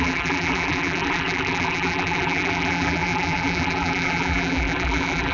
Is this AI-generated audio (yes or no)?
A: yes